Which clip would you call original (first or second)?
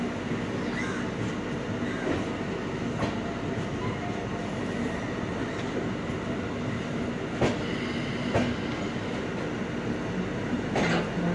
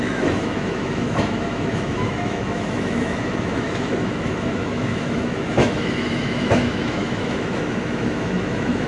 first